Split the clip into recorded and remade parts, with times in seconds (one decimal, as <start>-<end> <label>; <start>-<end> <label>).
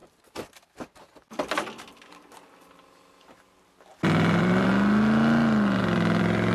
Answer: 0.0-3.8 recorded; 3.8-4.7 remade; 4.7-5.8 recorded; 5.8-6.5 remade